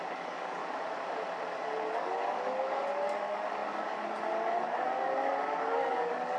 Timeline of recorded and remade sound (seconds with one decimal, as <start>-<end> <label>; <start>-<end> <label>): 0.0-0.6 remade; 0.6-1.9 recorded; 1.9-6.4 remade